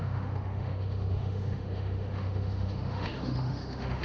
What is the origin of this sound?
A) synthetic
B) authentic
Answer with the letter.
A